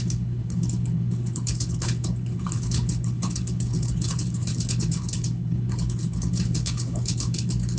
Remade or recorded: remade